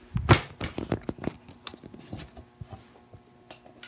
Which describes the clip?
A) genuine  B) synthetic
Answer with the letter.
A